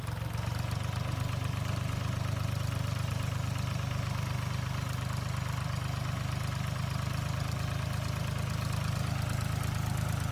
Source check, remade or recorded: recorded